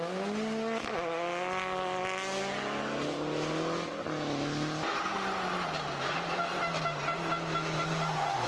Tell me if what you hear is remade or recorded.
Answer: recorded